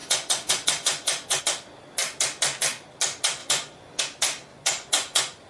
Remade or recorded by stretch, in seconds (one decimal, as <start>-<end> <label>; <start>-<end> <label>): 0.0-1.4 remade; 1.4-3.4 recorded; 3.4-4.0 remade; 4.0-4.5 recorded; 4.5-5.5 remade